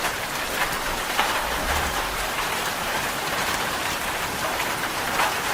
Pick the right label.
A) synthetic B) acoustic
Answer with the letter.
A